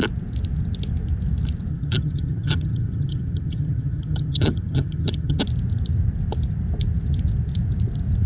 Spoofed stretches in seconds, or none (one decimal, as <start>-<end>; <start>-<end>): 1.7-5.4